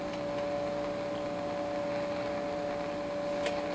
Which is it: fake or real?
real